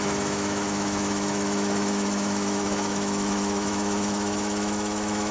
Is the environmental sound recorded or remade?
remade